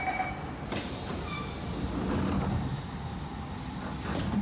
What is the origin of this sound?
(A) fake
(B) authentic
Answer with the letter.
B